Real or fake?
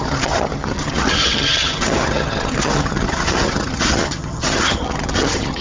fake